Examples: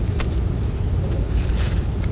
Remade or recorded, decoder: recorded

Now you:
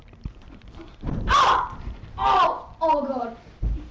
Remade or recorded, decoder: remade, vocoder, BigVGAN v2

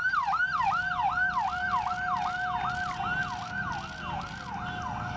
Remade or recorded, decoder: recorded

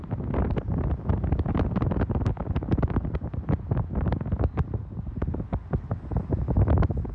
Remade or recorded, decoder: recorded